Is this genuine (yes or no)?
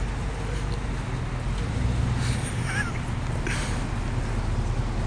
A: yes